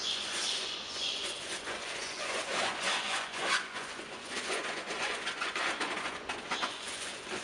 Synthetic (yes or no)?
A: yes